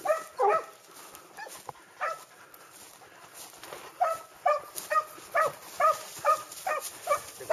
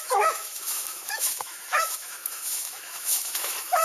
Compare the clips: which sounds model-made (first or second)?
second